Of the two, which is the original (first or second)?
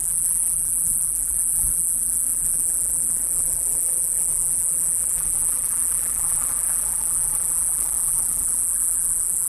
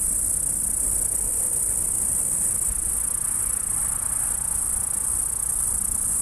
second